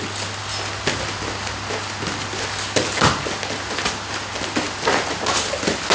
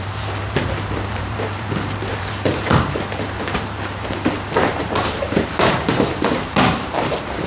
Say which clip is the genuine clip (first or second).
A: first